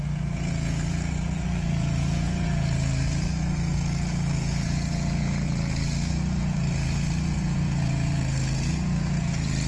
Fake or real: fake